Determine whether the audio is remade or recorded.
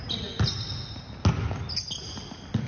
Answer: recorded